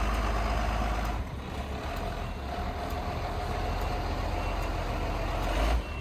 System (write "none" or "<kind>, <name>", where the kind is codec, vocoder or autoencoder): none